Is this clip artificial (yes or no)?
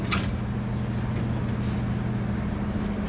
no